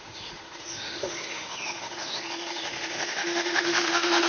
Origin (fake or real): fake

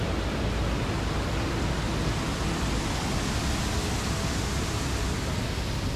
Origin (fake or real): real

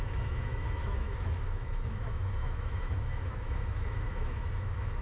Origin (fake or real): fake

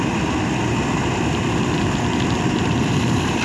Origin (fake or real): fake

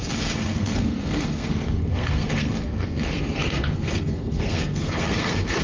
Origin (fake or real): fake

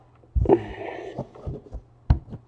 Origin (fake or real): real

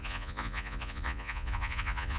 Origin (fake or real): fake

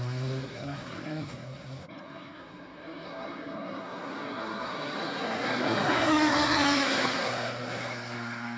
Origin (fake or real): fake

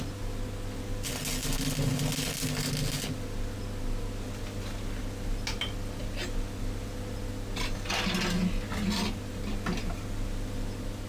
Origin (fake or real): real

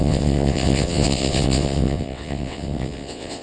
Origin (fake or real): fake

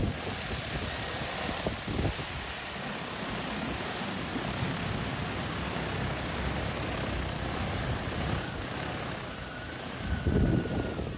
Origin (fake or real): real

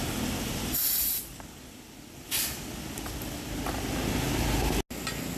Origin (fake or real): real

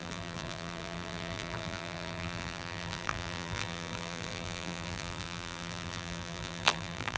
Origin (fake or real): fake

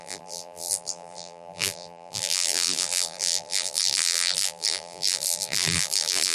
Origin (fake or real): fake